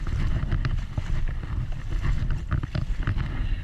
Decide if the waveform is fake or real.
real